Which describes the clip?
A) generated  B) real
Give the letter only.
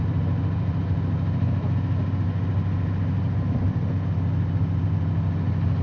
B